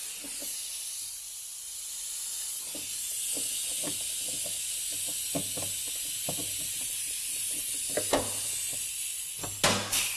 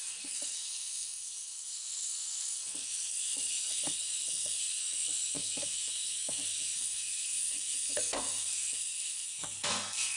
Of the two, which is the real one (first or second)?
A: first